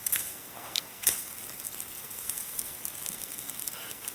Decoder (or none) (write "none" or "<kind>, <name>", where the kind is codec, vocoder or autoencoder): codec, SNAC